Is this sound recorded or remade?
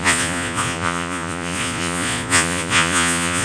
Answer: remade